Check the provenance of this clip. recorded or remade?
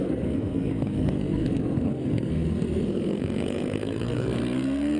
remade